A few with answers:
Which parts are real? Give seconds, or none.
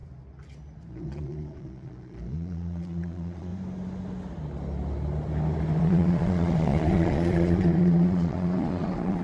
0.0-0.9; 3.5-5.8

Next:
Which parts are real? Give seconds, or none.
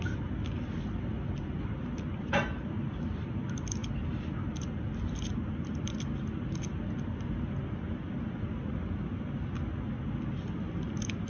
0.0-11.3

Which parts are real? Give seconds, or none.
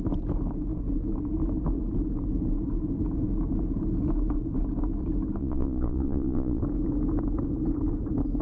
0.0-5.4; 6.6-8.4